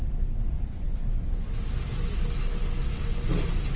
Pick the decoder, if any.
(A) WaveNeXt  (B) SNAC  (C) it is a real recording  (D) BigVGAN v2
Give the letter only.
C